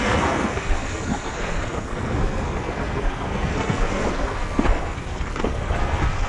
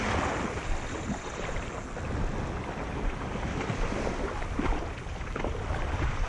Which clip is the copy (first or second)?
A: first